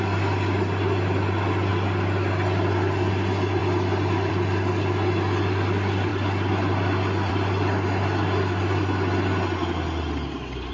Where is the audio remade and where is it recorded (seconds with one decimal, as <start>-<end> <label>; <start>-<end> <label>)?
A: 0.0-10.7 recorded